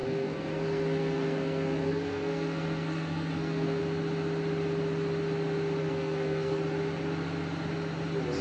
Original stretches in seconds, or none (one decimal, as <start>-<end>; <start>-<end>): 3.8-5.8; 6.6-8.4